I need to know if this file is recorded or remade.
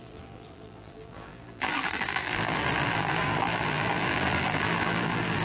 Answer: remade